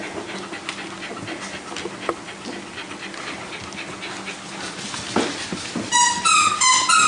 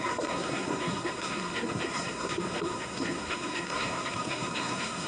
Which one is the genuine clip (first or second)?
first